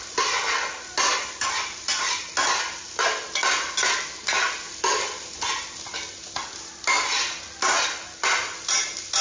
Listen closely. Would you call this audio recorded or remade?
recorded